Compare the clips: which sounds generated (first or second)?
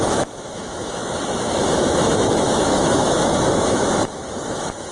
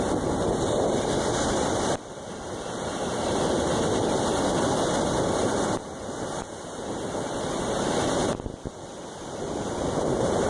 first